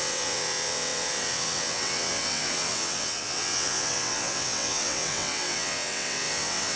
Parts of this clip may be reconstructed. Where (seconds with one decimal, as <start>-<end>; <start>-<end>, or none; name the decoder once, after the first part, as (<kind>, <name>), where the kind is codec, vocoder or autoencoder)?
0.0-6.8 (vocoder, WaveNeXt)